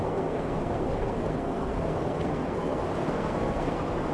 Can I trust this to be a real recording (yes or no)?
no